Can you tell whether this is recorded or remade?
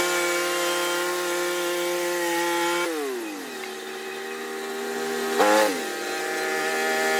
recorded